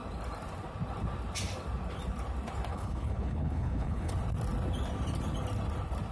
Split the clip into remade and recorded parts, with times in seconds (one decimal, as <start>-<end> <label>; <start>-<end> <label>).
0.0-2.7 recorded; 2.7-4.1 remade; 4.1-6.1 recorded